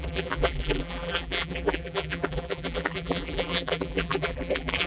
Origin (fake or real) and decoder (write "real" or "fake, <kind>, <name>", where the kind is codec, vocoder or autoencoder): fake, vocoder, BigVGAN v2